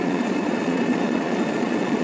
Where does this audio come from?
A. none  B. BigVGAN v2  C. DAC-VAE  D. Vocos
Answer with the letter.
D